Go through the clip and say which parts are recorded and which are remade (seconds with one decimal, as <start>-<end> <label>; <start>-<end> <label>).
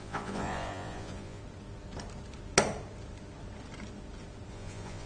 0.0-1.4 remade; 1.4-4.5 recorded; 4.5-5.1 remade